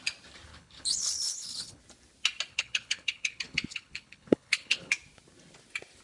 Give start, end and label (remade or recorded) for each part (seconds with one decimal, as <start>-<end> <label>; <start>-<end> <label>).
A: 0.0-0.5 recorded; 0.5-1.8 remade; 1.8-2.5 recorded; 2.5-4.9 remade; 4.9-6.0 recorded